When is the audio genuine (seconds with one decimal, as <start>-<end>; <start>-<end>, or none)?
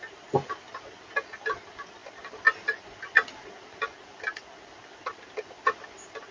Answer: 0.0-6.3